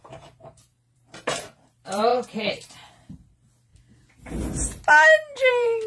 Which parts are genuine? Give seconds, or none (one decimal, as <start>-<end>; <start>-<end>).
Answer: 3.7-5.5